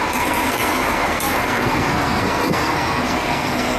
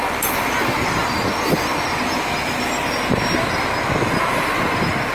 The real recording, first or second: second